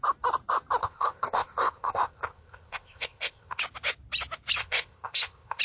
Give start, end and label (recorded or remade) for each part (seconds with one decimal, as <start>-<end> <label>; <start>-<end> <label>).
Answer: 0.0-0.8 recorded; 0.8-3.6 remade; 3.6-4.6 recorded; 4.6-5.6 remade